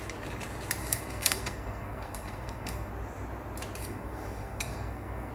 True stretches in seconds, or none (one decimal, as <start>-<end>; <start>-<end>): 0.0-0.8; 2.9-3.8